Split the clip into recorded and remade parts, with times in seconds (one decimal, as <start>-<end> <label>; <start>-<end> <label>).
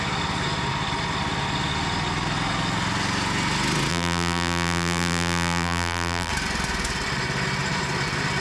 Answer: 0.0-3.9 recorded; 3.9-6.3 remade; 6.3-8.4 recorded